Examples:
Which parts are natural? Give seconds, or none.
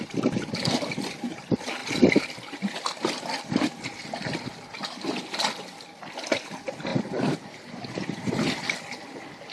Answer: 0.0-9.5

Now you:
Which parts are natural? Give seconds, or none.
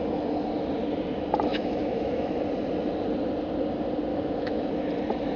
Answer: 0.0-1.5; 2.4-4.1; 4.7-5.4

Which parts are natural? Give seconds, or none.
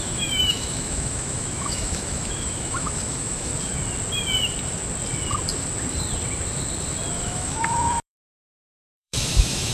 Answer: 3.5-7.1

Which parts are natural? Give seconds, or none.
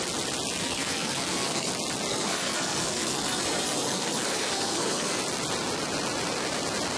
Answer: 0.0-0.6; 1.7-2.1; 5.2-7.0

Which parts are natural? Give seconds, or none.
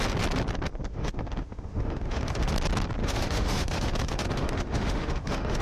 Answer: 0.0-0.9; 2.5-3.0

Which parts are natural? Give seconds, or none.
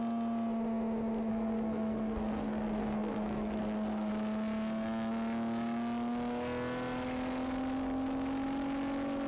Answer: 0.0-1.3; 4.1-9.3